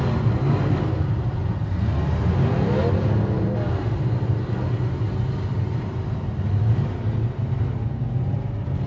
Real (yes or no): yes